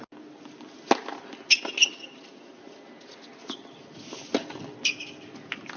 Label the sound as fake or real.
real